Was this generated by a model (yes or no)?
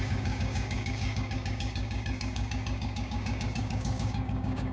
yes